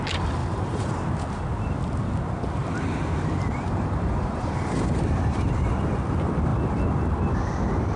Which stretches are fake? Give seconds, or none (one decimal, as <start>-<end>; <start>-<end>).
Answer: 0.4-0.9; 2.6-5.0